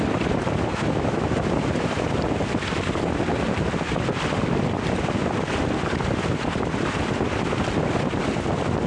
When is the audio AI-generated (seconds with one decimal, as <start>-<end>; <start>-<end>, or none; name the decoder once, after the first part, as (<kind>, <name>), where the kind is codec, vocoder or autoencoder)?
0.7-1.3 (autoencoder, DAC-VAE)

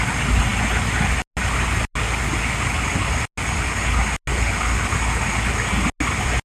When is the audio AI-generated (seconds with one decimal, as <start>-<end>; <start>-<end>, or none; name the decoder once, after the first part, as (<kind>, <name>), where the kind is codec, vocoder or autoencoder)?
none

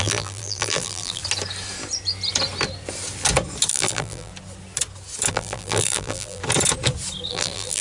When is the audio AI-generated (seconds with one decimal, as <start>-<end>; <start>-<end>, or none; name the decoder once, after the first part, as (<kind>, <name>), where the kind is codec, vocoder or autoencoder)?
0.0-1.2 (vocoder, BigVGAN v2); 3.7-4.3; 5.3-6.4; 7.3-7.8

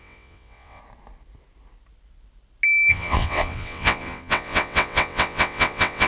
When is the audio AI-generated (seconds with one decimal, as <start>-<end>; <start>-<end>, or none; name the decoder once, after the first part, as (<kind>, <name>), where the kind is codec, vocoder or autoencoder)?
0.0-0.8 (vocoder, WaveNeXt); 2.9-6.1

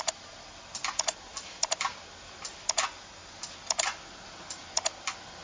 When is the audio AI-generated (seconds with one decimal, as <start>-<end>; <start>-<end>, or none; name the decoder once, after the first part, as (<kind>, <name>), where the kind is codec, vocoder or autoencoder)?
none

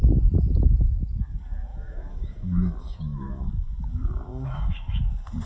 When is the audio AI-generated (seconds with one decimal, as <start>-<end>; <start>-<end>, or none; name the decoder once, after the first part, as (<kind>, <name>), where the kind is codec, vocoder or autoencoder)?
1.7-3.5 (autoencoder, DAC-VAE); 4.3-5.0